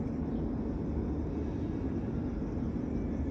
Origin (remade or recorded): recorded